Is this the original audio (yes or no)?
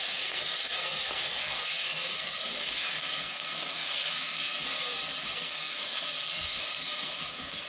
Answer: no